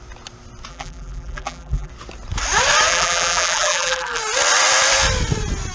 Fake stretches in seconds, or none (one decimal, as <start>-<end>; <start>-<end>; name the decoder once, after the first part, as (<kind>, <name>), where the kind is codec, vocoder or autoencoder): 0.7-1.9 (vocoder, BigVGAN v2); 2.9-4.2